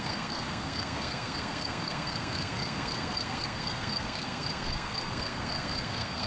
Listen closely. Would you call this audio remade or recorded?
remade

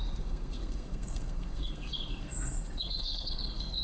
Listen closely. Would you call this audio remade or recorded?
remade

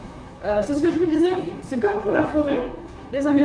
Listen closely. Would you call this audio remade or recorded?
remade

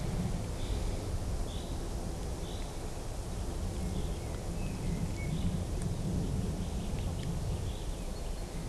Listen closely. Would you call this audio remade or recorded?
recorded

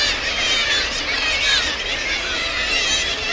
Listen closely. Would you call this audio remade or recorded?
recorded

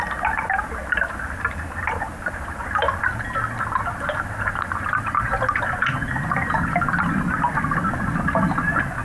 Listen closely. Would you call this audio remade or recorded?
recorded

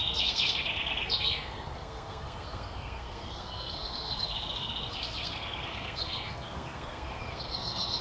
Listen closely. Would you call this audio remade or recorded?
remade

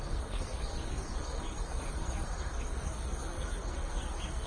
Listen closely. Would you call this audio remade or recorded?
remade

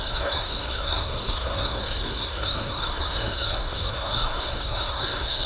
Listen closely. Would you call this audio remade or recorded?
remade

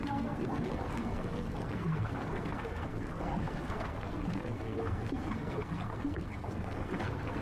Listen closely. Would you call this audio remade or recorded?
remade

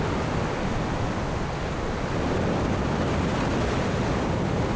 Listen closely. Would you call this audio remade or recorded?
recorded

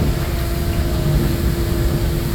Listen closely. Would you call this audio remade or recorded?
recorded